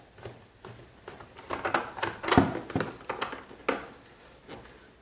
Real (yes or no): yes